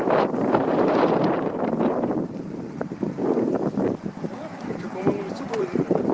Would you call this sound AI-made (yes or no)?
yes